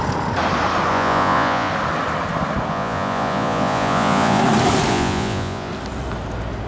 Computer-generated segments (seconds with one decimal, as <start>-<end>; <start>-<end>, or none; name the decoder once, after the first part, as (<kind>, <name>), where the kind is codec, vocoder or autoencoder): 0.9-1.7 (vocoder, Vocos); 2.7-4.4; 4.9-5.7